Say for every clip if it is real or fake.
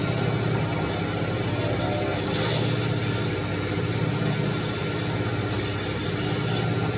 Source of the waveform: real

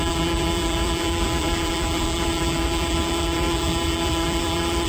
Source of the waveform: fake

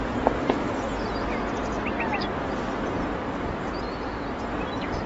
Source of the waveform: real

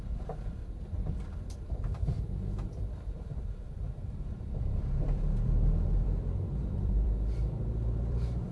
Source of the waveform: fake